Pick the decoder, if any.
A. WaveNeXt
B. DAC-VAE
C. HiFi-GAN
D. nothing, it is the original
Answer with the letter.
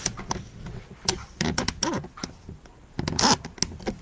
D